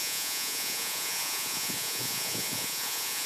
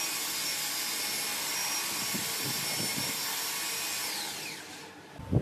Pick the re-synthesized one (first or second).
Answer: first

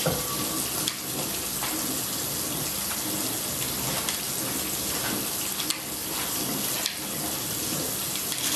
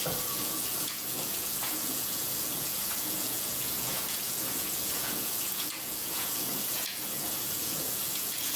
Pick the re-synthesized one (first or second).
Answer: second